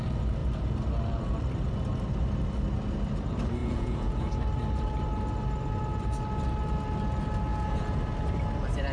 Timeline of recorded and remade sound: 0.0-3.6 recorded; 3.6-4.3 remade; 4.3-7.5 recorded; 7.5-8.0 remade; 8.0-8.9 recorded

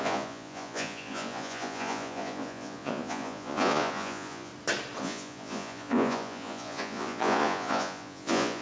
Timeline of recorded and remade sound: 0.0-4.5 remade; 4.5-5.0 recorded; 5.0-8.6 remade

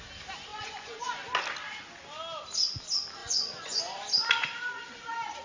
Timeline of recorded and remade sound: 0.0-0.5 recorded; 0.5-1.1 remade; 1.1-3.2 recorded; 3.2-3.8 remade; 3.8-5.4 recorded